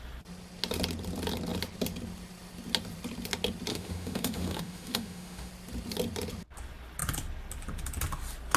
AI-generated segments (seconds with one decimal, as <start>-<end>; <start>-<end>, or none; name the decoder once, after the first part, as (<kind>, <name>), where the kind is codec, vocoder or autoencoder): 3.7-5.5 (autoencoder, DAC-VAE)

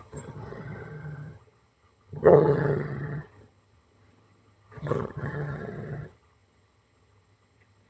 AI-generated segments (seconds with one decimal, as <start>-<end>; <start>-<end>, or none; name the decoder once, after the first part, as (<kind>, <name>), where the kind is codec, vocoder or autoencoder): 0.0-7.9 (vocoder, HiFi-GAN)

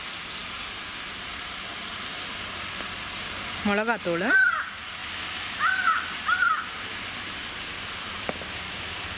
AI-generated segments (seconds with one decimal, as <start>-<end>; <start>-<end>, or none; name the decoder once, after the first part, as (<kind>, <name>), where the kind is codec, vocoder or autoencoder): none